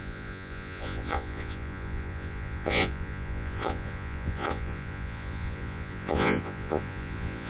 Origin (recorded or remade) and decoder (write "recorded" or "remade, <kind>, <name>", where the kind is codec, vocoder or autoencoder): remade, vocoder, Vocos